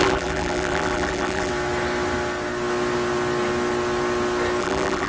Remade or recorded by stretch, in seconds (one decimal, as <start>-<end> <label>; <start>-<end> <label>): 0.0-1.5 remade; 1.5-4.6 recorded; 4.6-5.1 remade